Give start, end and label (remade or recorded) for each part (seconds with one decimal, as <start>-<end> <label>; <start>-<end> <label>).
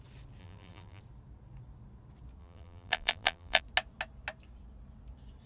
0.0-0.4 recorded; 0.4-1.0 remade; 1.0-2.4 recorded; 2.4-3.6 remade; 3.6-5.5 recorded